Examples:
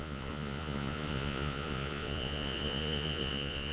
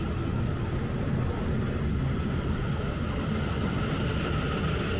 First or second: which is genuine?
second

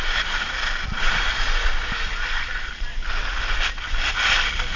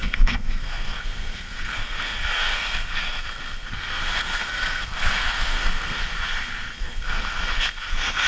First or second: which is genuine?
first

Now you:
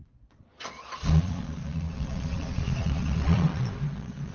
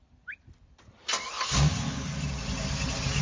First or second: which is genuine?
second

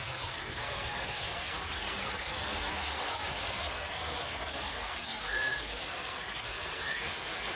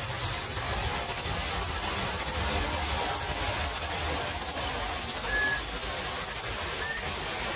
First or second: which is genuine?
second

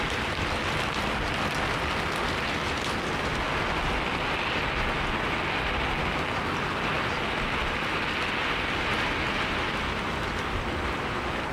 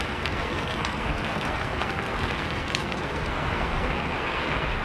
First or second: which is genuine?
first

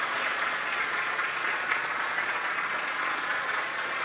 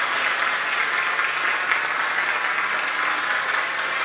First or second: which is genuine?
second